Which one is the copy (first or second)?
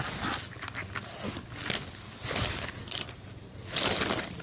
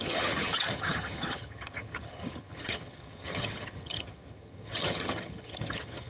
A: second